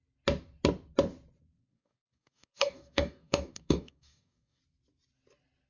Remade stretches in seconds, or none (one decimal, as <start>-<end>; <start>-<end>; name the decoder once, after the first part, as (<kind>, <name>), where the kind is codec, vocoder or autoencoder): 1.6-4.6 (codec, DAC)